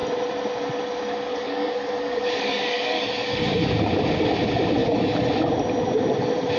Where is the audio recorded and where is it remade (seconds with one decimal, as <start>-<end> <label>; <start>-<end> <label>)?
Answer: 0.0-1.3 recorded; 1.3-3.7 remade; 3.7-4.8 recorded; 4.8-5.3 remade; 5.3-6.6 recorded